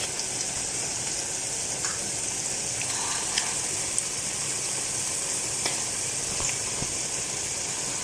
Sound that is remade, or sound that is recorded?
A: recorded